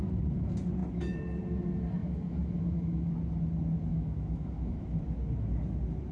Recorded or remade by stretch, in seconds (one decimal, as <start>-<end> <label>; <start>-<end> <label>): 0.0-2.0 recorded; 2.0-3.1 remade; 3.1-3.9 recorded; 3.9-5.0 remade; 5.0-6.1 recorded